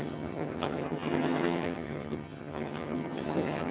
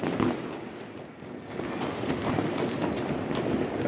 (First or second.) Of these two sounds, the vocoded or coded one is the first